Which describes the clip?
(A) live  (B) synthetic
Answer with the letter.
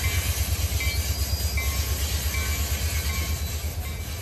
A